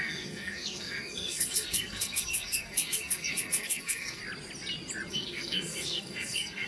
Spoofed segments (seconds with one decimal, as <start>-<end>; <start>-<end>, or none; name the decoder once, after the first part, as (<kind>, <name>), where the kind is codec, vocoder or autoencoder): 0.0-4.2 (codec, SNAC); 5.1-6.7